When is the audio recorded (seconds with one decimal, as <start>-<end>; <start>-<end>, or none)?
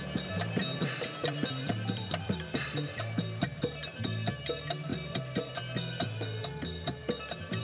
0.0-0.6; 3.8-7.6